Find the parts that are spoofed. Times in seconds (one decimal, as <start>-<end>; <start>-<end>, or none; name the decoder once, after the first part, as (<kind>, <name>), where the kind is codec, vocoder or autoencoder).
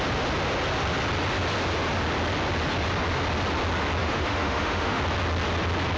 4.0-5.0 (autoencoder, DAC-VAE)